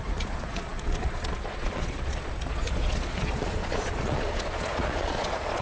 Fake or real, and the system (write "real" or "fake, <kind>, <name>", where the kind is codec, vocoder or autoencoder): fake, vocoder, Vocos